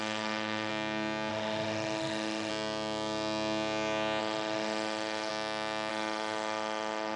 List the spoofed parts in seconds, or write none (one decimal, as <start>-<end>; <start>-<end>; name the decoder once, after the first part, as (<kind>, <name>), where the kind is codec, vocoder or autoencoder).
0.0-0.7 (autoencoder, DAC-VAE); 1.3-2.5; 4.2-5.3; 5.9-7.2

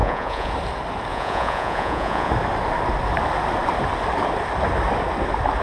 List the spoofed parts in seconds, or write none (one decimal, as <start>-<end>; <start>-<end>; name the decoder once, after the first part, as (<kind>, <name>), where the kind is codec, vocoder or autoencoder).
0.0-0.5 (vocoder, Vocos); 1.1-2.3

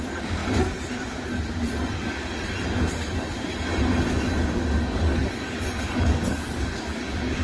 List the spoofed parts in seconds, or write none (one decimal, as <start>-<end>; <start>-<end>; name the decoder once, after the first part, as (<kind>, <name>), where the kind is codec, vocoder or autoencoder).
0.0-0.4 (codec, DAC); 4.8-7.4